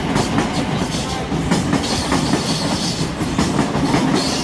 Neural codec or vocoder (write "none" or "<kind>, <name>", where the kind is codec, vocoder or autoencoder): none